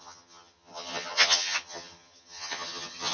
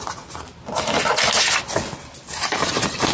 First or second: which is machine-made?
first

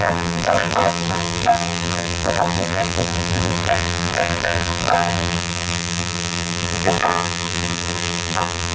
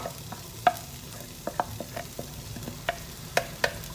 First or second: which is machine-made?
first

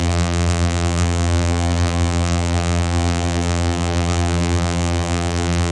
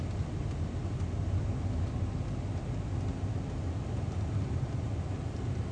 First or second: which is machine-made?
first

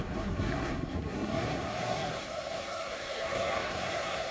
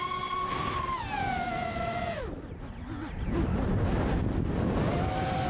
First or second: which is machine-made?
first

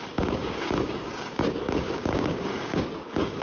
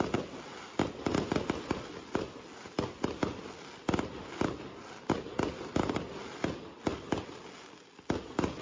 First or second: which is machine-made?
first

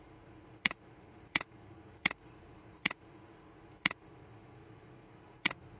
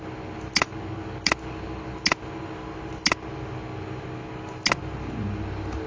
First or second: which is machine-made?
first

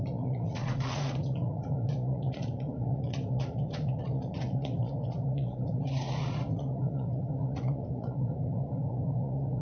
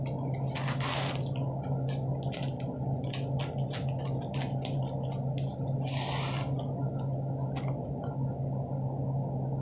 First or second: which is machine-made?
first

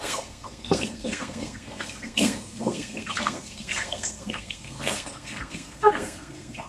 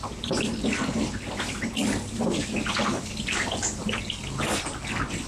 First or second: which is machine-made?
first